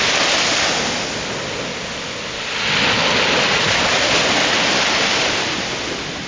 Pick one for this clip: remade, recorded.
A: recorded